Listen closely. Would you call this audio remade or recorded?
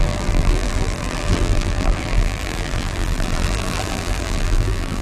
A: remade